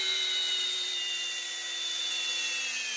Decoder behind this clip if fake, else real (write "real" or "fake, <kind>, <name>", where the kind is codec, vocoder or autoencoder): fake, vocoder, BigVGAN v2